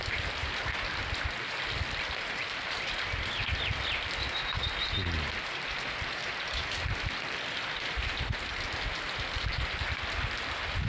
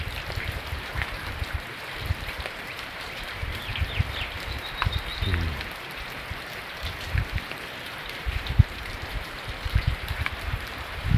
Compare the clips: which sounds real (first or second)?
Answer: first